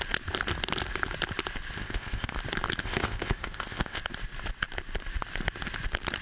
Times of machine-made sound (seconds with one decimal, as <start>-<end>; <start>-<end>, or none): 1.8-2.3; 2.8-4.0